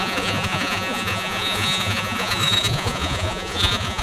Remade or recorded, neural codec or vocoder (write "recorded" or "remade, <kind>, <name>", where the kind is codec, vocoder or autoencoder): remade, vocoder, Vocos